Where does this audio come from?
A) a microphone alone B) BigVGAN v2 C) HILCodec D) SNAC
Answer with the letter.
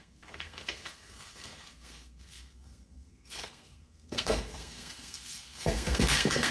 D